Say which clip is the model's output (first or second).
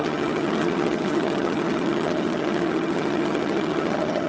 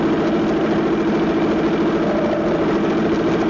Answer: first